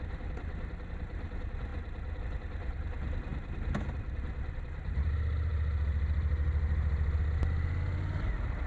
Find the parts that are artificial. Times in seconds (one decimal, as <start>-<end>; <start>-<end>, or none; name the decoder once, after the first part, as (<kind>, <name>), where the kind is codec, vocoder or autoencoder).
none